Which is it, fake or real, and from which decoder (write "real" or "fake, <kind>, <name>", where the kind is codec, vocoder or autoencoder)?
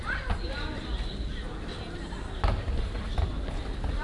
real